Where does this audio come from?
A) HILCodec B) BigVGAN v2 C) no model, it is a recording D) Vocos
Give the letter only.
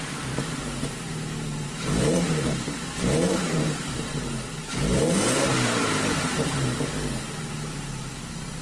B